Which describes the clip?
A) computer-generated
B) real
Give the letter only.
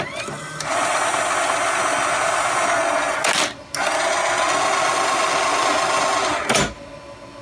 B